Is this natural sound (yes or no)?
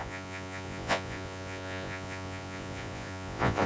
no